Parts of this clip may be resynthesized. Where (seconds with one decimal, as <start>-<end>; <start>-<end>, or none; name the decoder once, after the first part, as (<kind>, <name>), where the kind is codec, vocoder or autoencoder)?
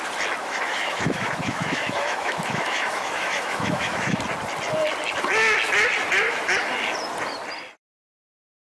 0.4-4.2 (autoencoder, DAC-VAE)